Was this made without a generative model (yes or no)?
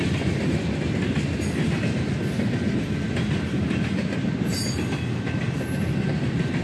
yes